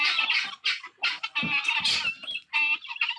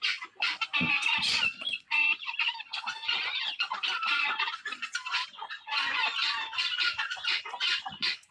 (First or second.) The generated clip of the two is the second